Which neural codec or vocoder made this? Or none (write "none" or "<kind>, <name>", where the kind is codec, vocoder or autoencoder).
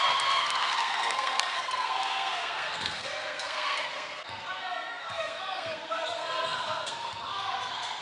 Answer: codec, SNAC